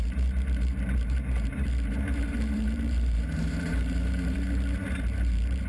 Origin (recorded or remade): remade